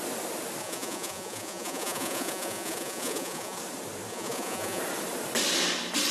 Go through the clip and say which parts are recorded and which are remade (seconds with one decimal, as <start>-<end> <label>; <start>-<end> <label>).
0.0-0.6 recorded; 0.6-3.6 remade; 3.6-4.1 recorded; 4.1-4.8 remade; 4.8-6.1 recorded